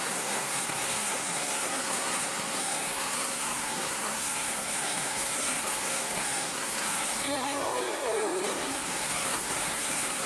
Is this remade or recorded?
remade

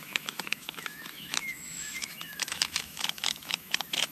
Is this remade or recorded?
remade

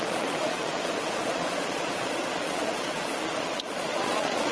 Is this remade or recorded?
remade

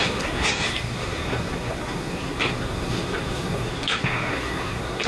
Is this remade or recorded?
remade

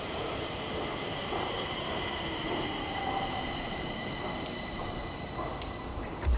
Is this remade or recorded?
remade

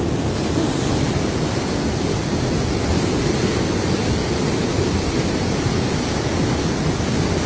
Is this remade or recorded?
recorded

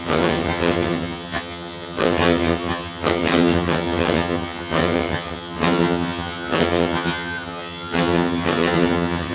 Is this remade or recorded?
remade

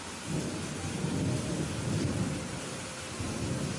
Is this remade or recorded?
recorded